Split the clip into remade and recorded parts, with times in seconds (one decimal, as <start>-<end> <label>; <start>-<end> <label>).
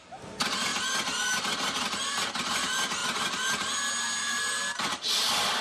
0.0-0.7 remade; 0.7-2.1 recorded; 2.1-3.0 remade; 3.0-4.2 recorded; 4.2-5.6 remade